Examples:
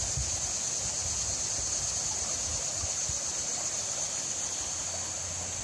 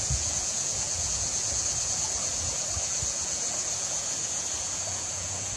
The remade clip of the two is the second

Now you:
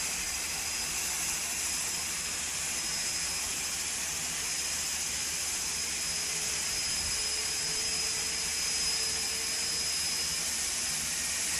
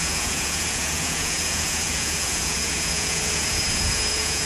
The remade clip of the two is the second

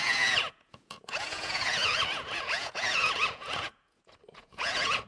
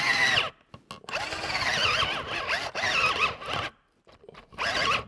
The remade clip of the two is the first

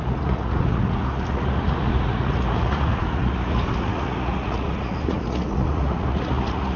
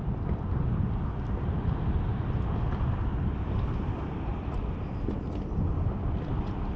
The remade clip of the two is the first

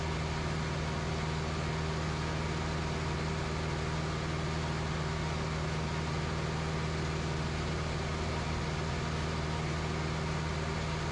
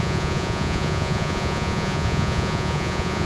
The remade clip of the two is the second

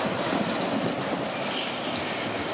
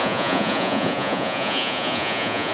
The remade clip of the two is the second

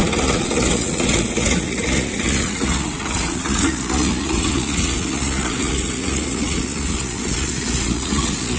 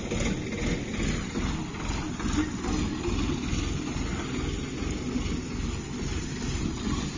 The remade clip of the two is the first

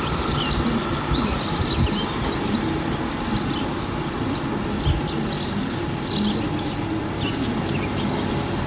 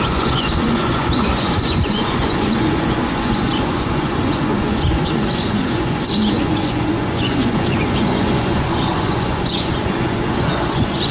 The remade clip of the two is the second